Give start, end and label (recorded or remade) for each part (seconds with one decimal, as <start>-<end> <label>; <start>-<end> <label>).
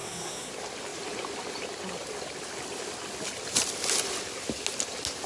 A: 0.0-0.5 remade; 0.5-5.3 recorded